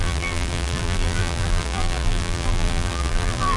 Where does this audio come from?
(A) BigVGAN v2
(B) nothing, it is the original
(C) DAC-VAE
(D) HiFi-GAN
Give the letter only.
A